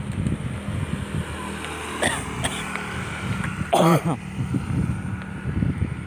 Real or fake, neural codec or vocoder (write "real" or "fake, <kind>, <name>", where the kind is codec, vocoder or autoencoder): real